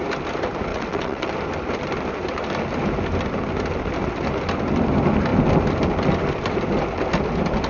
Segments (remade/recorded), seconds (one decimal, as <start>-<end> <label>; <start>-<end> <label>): 0.0-0.7 recorded; 0.7-1.3 remade; 1.3-7.7 recorded